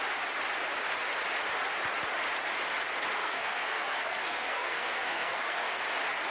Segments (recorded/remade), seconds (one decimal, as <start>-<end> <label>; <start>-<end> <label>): 0.0-3.2 recorded; 3.2-5.8 remade; 5.8-6.3 recorded